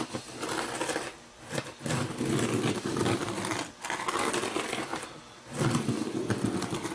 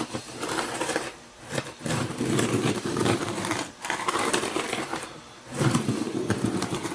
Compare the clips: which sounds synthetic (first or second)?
second